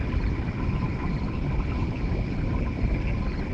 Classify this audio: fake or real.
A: fake